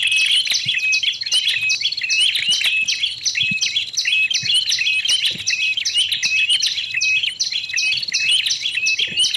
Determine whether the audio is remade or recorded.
recorded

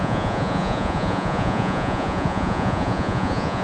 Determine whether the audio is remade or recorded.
remade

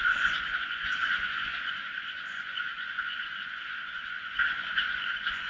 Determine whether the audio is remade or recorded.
remade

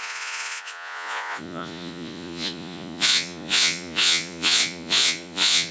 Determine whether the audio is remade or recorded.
remade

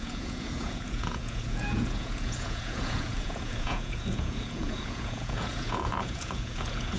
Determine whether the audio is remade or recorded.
remade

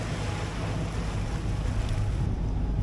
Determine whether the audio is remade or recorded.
recorded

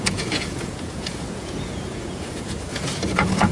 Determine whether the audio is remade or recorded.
remade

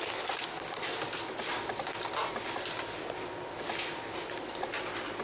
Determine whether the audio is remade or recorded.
recorded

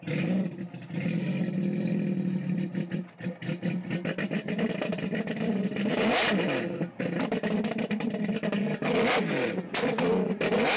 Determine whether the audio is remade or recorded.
recorded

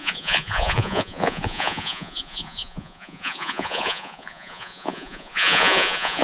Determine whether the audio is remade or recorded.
remade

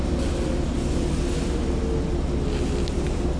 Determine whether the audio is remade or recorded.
recorded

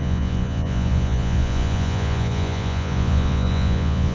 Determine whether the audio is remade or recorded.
remade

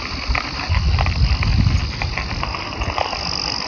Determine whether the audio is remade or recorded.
recorded